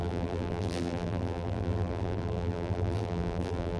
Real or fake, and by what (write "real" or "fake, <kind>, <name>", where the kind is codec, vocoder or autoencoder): fake, vocoder, BigVGAN v2